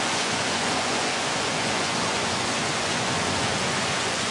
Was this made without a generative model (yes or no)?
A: no